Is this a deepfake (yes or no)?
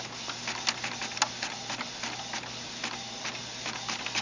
no